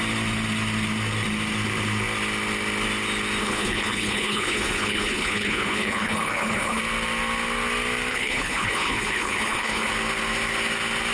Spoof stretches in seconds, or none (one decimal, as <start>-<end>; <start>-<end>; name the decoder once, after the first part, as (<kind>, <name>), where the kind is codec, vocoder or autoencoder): 3.4-6.8 (codec, HILCodec); 8.1-9.9